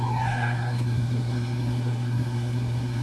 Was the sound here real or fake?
fake